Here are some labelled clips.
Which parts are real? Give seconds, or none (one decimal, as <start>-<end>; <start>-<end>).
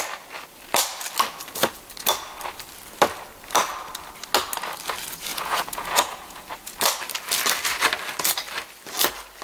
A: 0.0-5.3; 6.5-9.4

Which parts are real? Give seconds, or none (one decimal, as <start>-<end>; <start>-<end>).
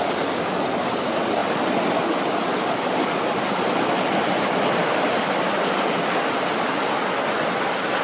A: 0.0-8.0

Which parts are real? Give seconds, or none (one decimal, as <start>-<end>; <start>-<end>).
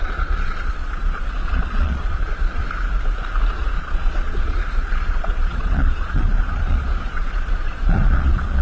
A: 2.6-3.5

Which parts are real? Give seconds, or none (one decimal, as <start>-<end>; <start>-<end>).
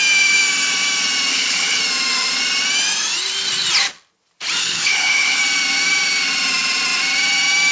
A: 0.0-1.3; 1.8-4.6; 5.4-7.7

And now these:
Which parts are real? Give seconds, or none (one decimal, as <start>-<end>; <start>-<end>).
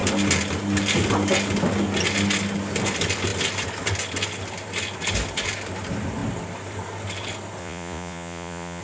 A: 0.0-7.6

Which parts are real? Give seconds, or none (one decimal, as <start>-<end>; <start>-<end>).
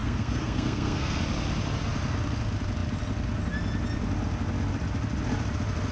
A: 1.2-5.9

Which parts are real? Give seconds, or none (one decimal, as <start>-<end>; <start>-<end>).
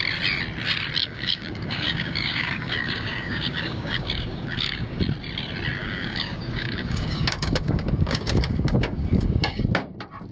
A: 0.0-1.0; 5.0-5.8; 9.6-10.3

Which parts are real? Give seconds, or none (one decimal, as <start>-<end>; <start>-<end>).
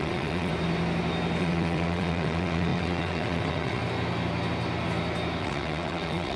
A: 0.5-1.4; 3.8-5.4